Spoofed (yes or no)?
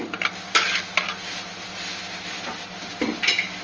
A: no